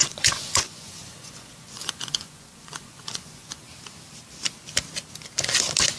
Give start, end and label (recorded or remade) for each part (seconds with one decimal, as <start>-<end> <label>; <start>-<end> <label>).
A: 0.0-3.6 remade; 3.6-6.0 recorded